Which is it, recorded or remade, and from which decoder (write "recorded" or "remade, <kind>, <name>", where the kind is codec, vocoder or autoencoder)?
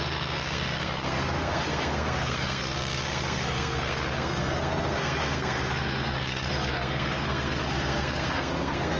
remade, codec, SNAC